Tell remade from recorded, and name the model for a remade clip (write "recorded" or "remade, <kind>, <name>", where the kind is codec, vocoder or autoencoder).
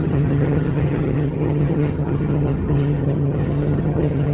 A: remade, vocoder, HiFi-GAN